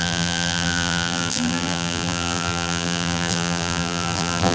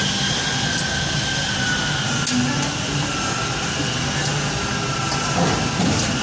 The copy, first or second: first